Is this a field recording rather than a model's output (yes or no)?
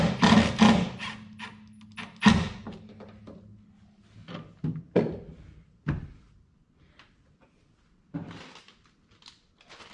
yes